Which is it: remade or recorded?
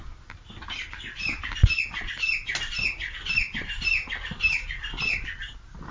recorded